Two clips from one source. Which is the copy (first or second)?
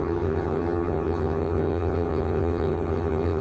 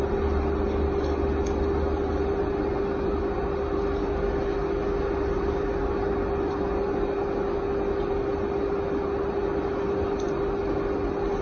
first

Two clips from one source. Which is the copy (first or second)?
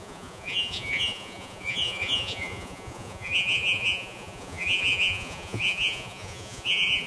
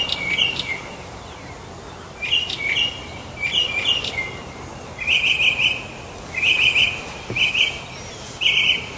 first